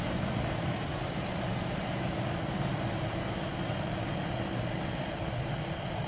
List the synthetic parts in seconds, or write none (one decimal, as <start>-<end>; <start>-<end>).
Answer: none